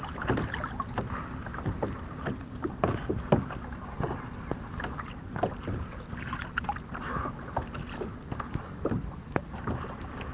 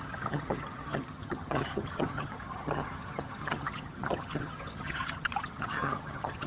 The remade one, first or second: second